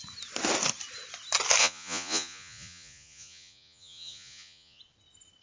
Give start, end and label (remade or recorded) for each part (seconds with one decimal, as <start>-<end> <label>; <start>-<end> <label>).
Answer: 0.0-1.6 recorded; 1.6-4.8 remade; 4.8-5.4 recorded